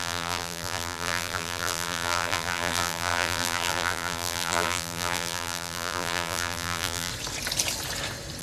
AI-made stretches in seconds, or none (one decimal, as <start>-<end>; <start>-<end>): 0.0-7.1